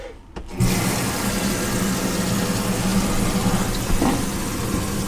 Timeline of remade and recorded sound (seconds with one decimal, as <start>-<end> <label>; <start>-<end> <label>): 0.0-5.1 recorded